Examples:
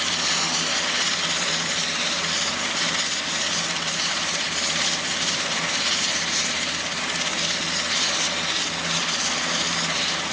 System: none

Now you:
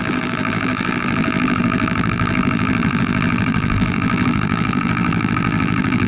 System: vocoder, BigVGAN v2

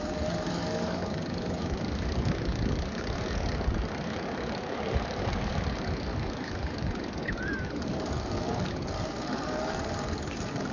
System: codec, DAC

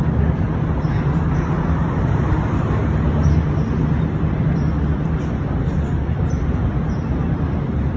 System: none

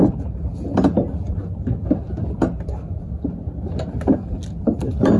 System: none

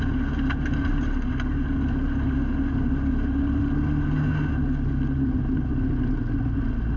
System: none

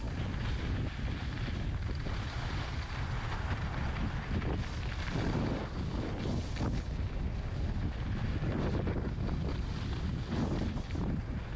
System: none